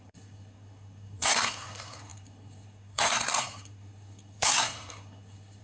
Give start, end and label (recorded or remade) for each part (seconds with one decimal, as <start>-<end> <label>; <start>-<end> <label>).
0.0-5.6 remade